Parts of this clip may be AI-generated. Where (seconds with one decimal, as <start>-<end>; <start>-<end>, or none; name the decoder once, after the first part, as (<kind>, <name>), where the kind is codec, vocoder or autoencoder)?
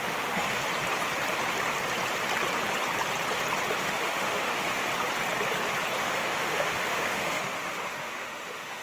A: 0.0-0.6 (autoencoder, DAC-VAE); 3.8-4.9; 6.0-8.8